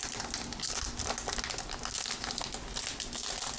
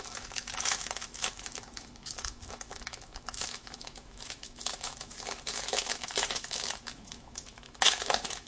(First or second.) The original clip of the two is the first